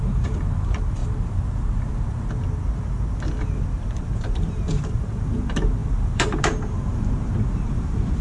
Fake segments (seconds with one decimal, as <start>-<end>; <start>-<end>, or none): 0.0-1.0; 3.9-8.2